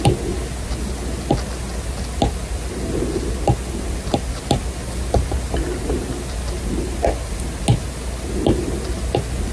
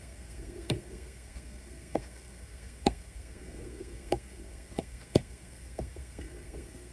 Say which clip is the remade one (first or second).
second